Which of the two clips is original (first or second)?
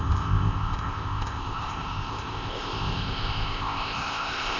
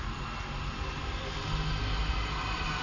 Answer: second